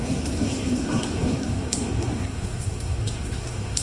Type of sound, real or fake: fake